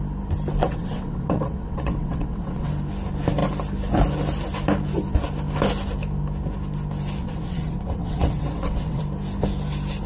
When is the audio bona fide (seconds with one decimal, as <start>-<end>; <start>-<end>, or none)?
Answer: 0.0-0.6; 2.7-7.2; 9.0-10.1